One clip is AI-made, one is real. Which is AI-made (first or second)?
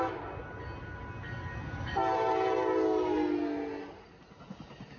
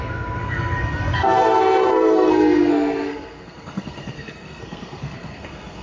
second